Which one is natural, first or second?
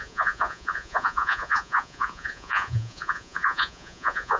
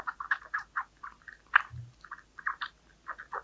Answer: second